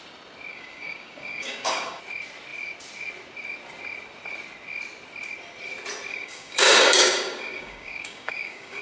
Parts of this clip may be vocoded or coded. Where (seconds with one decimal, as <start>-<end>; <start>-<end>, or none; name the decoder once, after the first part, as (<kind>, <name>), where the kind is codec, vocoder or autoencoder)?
0.5-2.0 (codec, DAC); 6.1-8.8